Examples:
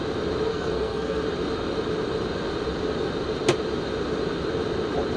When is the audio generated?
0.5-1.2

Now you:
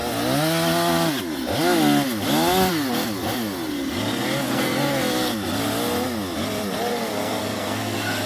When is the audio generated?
4.4-5.3; 6.9-8.3

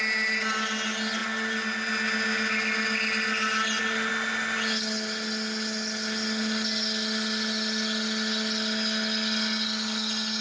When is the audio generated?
none

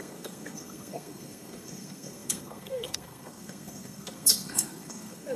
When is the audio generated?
0.0-5.4

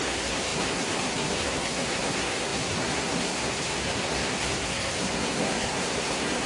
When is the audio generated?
0.0-6.5

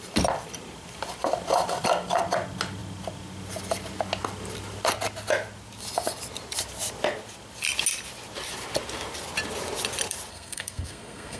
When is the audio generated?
10.3-11.4

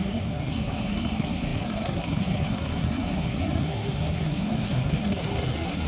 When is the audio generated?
0.0-5.9

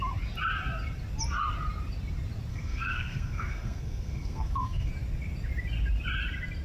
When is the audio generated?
2.5-4.9